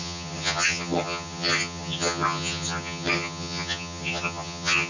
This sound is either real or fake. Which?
fake